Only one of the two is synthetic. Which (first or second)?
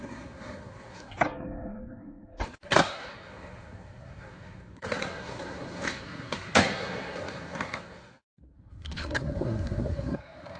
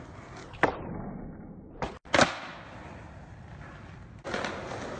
first